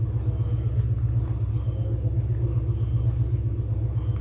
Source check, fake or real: real